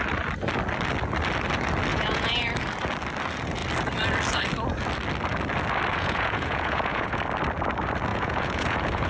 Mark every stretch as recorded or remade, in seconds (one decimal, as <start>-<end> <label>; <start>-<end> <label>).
0.0-1.9 recorded; 1.9-2.5 remade; 2.5-5.9 recorded; 5.9-7.2 remade; 7.2-8.1 recorded; 8.1-9.1 remade